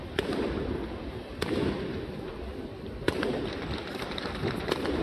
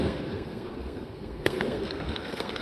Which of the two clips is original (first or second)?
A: first